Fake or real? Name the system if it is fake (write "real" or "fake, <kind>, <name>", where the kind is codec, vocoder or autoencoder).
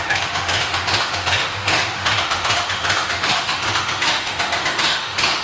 fake, autoencoder, DAC-VAE